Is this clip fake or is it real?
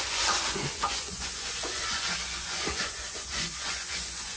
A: fake